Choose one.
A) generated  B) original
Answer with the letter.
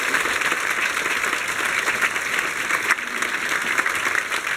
B